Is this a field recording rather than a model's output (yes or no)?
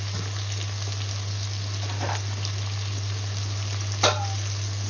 yes